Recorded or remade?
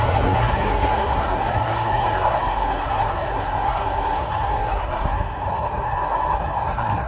remade